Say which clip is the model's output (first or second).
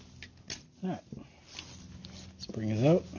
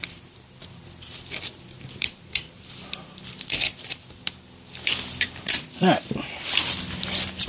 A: second